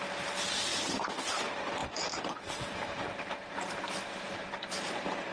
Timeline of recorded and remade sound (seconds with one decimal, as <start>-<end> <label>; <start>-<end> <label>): 0.0-0.7 recorded; 0.7-1.4 remade; 1.4-1.8 recorded; 1.8-5.3 remade